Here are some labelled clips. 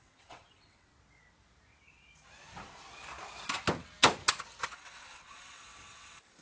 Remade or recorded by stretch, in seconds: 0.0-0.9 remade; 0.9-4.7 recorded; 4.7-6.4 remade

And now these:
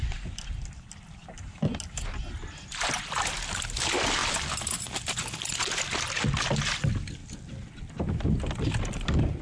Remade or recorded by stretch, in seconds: 0.0-9.4 recorded

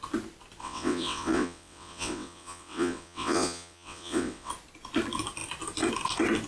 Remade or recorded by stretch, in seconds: 0.0-0.6 recorded; 0.6-4.5 remade; 4.5-6.5 recorded